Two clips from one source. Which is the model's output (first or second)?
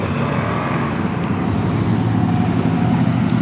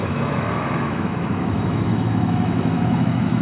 second